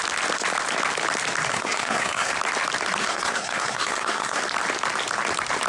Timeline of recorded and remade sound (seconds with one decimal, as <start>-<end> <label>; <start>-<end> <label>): 0.0-1.5 recorded; 1.5-2.3 remade; 2.3-3.0 recorded; 3.0-4.4 remade; 4.4-5.7 recorded